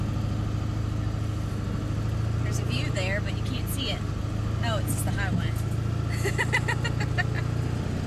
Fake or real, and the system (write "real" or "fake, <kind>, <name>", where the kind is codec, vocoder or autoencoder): real